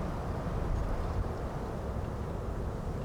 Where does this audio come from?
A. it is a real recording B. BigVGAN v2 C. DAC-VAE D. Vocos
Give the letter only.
B